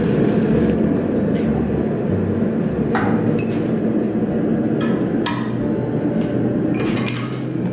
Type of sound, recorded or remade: recorded